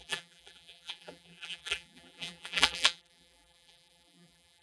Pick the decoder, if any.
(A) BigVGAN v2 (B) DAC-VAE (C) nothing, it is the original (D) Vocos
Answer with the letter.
A